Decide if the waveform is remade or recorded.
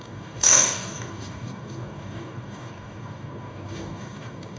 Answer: remade